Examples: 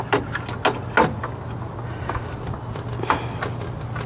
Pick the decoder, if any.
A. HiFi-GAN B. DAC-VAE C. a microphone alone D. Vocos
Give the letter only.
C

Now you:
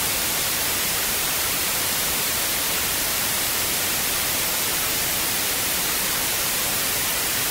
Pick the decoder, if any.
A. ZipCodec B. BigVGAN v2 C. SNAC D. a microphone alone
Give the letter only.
B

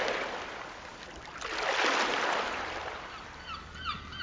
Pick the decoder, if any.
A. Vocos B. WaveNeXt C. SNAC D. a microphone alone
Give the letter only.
D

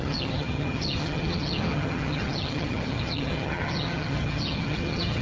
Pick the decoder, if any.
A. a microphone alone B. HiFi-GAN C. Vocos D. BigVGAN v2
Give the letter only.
B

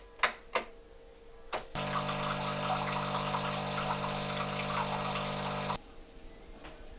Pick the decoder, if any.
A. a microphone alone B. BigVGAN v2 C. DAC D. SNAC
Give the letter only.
A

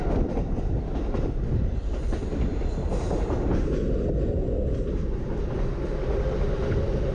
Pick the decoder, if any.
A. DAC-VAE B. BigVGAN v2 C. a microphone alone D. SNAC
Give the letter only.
C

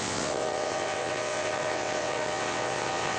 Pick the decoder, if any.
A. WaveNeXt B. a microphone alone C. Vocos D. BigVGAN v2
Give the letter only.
A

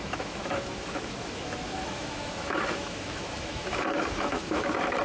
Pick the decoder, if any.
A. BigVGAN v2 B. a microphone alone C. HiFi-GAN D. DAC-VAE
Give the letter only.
D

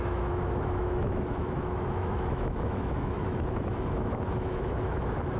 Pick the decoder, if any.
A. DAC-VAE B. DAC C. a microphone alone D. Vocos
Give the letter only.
A